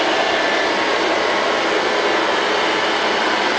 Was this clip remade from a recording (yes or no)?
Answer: no